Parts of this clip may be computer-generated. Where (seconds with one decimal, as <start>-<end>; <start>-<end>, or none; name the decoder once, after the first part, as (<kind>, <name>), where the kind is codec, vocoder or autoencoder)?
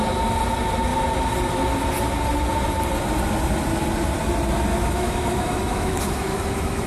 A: 4.7-6.9 (autoencoder, DAC-VAE)